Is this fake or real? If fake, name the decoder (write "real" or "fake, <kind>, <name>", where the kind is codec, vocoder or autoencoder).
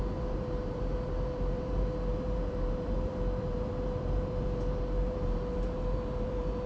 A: fake, vocoder, BigVGAN v2